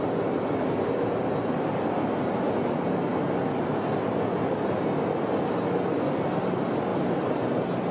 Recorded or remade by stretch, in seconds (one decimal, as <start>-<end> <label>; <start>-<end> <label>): 0.0-7.9 recorded